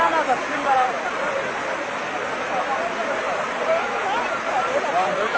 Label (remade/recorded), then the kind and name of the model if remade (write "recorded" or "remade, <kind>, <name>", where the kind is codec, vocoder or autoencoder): recorded